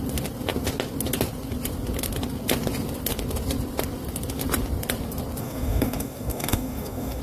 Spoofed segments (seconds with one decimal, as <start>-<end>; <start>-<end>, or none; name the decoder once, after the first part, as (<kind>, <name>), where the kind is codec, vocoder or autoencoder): 5.4-7.2 (codec, DAC)